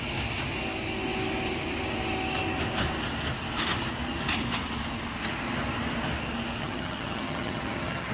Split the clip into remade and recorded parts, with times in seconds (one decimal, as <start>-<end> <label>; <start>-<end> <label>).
0.0-6.6 recorded; 6.6-8.1 remade